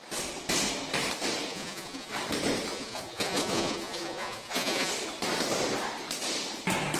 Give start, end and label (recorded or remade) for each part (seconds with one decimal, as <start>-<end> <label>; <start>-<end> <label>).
0.0-1.5 recorded; 1.5-2.1 remade; 2.1-2.7 recorded; 2.7-4.9 remade; 4.9-7.0 recorded